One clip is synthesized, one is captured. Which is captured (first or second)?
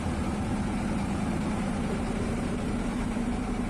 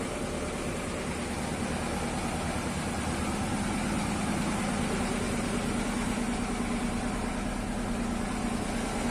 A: second